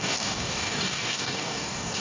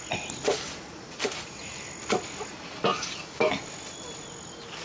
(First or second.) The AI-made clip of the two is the first